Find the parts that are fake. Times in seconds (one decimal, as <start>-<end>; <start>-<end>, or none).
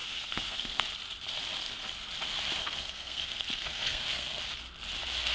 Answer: 0.0-0.8; 2.6-4.4